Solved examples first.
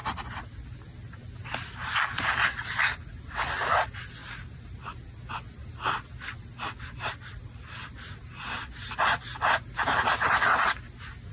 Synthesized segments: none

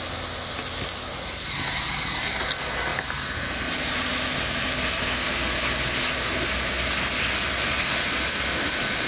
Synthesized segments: none

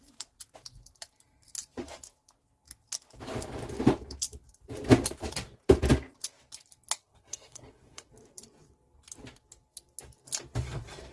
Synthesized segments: 7.0-8.1 (codec, SNAC)

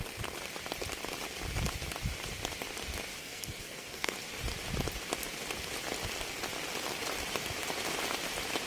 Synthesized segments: 3.2-4.1 (codec, SNAC)

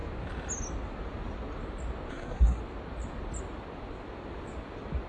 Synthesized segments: 2.1-2.6 (codec, SNAC)

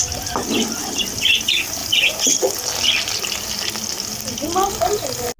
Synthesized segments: none